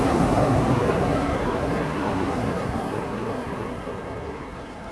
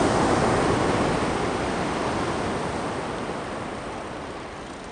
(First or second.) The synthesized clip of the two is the first